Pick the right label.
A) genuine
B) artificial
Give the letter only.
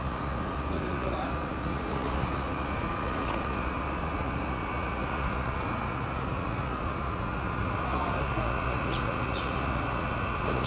B